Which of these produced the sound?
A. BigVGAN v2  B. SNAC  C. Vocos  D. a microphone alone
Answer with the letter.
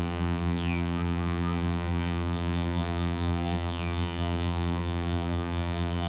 A